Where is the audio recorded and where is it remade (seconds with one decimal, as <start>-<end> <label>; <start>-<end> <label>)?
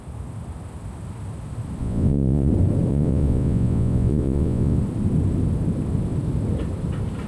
0.0-1.8 recorded; 1.8-2.5 remade; 2.5-2.9 recorded; 2.9-4.8 remade; 4.8-7.3 recorded